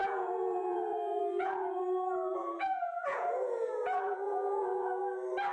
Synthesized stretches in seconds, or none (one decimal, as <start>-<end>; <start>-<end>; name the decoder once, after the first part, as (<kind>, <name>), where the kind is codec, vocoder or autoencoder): 0.0-1.8 (vocoder, Vocos); 2.4-5.0